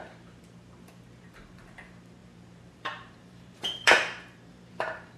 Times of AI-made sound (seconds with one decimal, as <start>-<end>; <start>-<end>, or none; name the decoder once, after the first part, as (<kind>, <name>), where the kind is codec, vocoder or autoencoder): 0.0-5.2 (vocoder, BigVGAN v2)